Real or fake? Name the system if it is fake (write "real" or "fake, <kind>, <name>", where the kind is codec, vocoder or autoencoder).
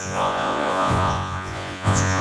fake, vocoder, Vocos